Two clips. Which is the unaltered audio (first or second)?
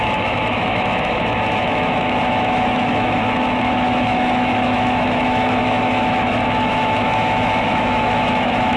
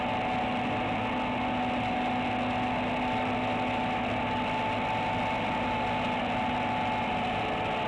second